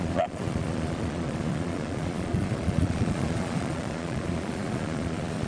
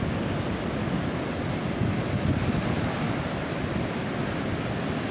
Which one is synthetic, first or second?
first